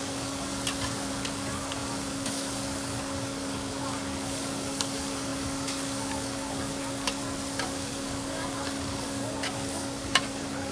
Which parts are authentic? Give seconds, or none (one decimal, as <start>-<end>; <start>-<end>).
0.5-1.1; 7.2-7.7